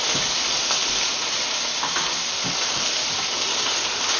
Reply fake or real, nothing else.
real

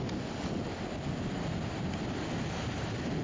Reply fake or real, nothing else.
real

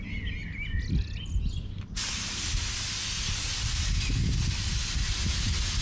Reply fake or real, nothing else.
real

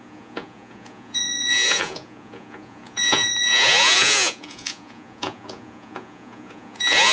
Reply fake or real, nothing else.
fake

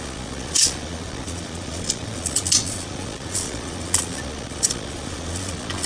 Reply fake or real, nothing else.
fake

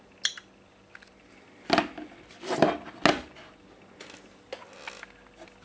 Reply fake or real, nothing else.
real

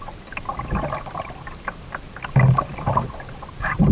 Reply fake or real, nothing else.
real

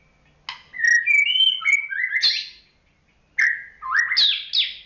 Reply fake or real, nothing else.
real